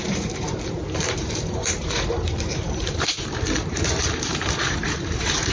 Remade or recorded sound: remade